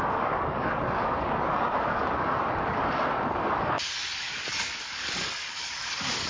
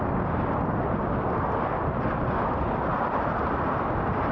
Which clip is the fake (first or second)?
first